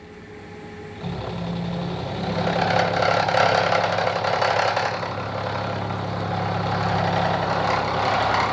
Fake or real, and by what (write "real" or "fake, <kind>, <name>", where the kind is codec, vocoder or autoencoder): real